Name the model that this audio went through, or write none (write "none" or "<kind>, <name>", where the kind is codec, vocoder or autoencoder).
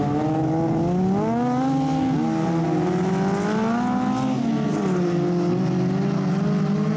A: none